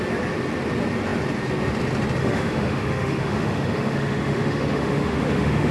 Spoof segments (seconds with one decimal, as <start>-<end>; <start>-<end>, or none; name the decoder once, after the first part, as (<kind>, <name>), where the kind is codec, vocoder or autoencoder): 2.2-5.7 (autoencoder, DAC-VAE)